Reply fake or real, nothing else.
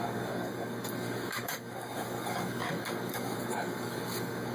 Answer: fake